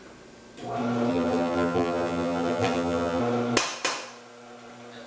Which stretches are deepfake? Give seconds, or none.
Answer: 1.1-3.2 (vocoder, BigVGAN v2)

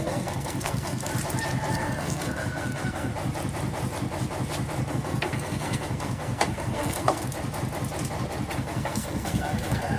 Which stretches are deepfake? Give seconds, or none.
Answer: 0.0-1.1 (codec, SNAC); 1.7-3.1; 4.9-7.3; 8.6-10.0

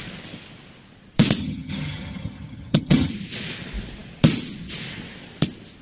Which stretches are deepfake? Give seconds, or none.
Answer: 1.4-3.1 (vocoder, HiFi-GAN)

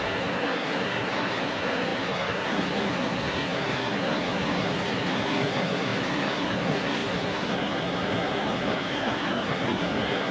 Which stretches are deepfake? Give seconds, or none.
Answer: 0.0-10.3 (codec, SNAC)

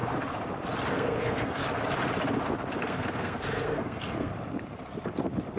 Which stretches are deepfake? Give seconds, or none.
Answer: 0.9-1.6 (codec, SNAC); 2.8-4.3

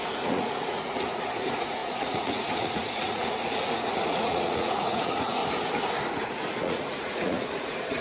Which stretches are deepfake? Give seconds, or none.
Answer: 0.0-5.4 (vocoder, Vocos); 6.1-8.0

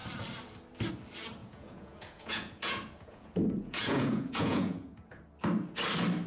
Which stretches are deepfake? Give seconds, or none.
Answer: 1.4-5.2 (vocoder, Vocos)